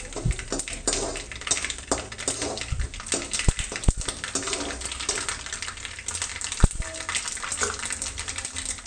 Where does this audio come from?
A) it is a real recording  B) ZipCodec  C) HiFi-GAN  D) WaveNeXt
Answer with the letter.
A